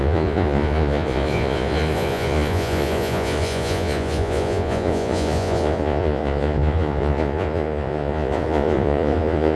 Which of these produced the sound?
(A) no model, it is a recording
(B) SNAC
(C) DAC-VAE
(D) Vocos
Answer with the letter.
D